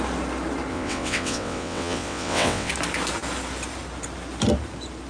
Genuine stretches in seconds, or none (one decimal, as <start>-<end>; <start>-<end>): 0.0-0.7; 2.7-5.1